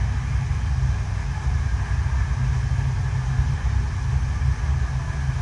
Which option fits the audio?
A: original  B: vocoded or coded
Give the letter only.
A